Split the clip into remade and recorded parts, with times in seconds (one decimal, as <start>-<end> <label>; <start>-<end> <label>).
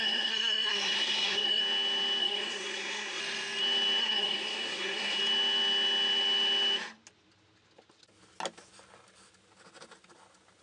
0.0-1.6 remade; 1.6-2.2 recorded; 2.2-3.2 remade; 3.2-4.0 recorded; 4.0-5.2 remade; 5.2-10.6 recorded